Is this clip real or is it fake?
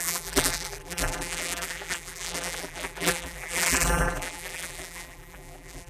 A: fake